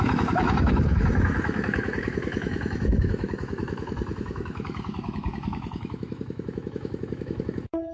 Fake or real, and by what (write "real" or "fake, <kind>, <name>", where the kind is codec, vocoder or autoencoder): fake, autoencoder, DAC-VAE